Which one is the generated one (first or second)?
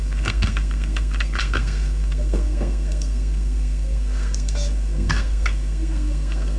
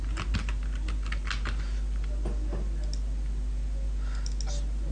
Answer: first